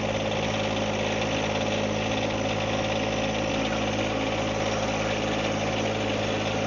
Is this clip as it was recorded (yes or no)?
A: yes